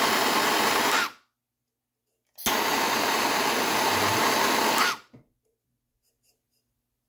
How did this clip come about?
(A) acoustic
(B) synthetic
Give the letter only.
A